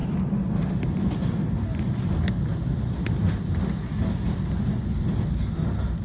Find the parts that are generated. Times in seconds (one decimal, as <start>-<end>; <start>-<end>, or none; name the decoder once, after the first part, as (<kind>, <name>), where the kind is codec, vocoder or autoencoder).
none